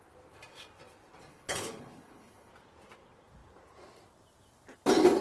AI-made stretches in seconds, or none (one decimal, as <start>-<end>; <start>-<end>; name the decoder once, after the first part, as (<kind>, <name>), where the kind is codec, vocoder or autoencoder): 1.3-2.5 (codec, HILCodec)